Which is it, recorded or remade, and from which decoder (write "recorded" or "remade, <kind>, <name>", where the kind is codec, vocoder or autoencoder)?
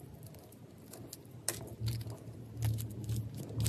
recorded